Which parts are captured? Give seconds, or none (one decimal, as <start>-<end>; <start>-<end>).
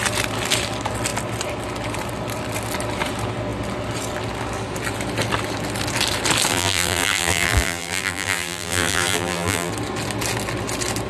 0.0-6.5; 9.7-11.1